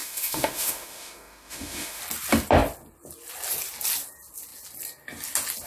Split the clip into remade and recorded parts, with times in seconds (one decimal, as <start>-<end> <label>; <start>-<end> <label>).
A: 0.0-2.0 remade; 2.0-5.7 recorded

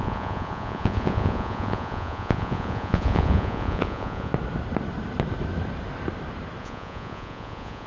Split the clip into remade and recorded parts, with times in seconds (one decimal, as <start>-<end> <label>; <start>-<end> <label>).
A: 0.0-4.3 remade; 4.3-6.6 recorded; 6.6-7.9 remade

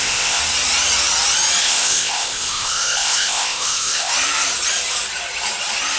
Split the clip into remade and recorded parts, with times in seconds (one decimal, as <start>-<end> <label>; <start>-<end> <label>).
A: 0.0-0.4 remade; 0.4-1.6 recorded; 1.6-4.1 remade; 4.1-6.0 recorded

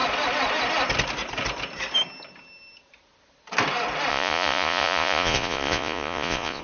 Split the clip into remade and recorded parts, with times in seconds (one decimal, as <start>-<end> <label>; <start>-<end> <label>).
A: 0.0-4.1 recorded; 4.1-6.6 remade

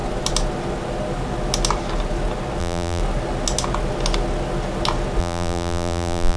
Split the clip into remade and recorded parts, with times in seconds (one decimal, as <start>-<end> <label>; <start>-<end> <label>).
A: 0.0-2.6 recorded; 2.6-3.0 remade; 3.0-5.2 recorded; 5.2-6.4 remade

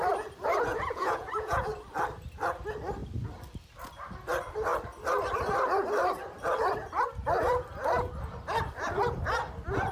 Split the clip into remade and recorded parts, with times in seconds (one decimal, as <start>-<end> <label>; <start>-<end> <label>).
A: 0.0-0.7 recorded; 0.7-1.7 remade; 1.7-9.9 recorded